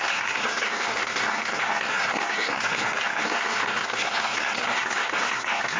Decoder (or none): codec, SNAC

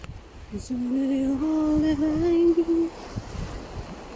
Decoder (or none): none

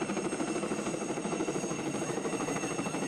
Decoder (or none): vocoder, BigVGAN v2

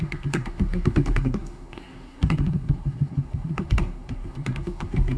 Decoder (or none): codec, SNAC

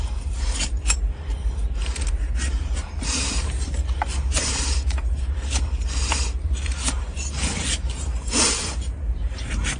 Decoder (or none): vocoder, BigVGAN v2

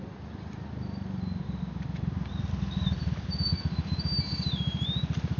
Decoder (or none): none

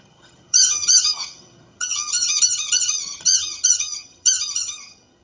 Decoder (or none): vocoder, HiFi-GAN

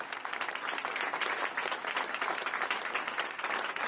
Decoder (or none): none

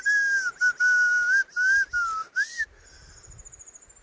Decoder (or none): none